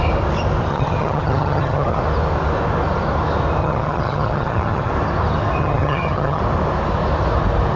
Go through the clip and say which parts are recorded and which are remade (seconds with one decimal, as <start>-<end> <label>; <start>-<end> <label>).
0.0-0.7 recorded; 0.7-2.0 remade; 2.0-3.6 recorded; 3.6-4.9 remade; 4.9-5.6 recorded; 5.6-6.4 remade; 6.4-7.8 recorded